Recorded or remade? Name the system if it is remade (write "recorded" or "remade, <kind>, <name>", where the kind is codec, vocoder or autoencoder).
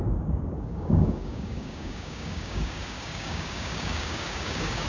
remade, codec, DAC